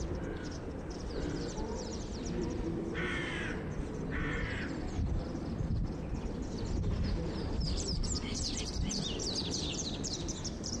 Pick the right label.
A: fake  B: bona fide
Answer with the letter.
A